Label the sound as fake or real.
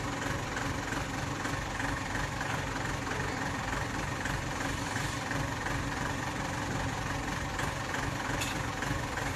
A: fake